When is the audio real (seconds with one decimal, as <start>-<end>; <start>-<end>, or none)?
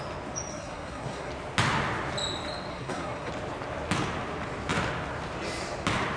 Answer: 0.0-0.5; 1.3-2.7; 3.3-6.2